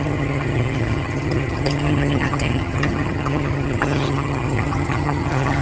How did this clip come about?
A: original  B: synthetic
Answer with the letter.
B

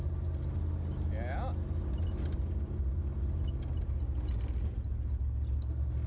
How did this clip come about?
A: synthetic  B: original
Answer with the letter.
B